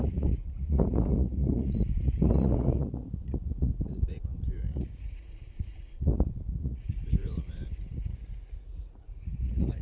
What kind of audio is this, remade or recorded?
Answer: remade